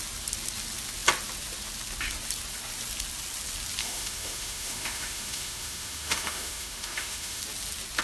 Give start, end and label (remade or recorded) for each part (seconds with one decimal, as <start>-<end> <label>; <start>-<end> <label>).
0.0-3.8 recorded; 3.8-7.4 remade; 7.4-8.0 recorded